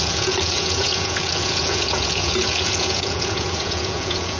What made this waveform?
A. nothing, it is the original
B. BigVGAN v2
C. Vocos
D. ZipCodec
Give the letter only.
C